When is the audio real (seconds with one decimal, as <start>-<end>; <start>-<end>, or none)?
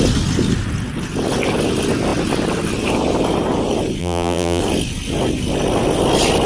0.0-4.0; 4.6-6.5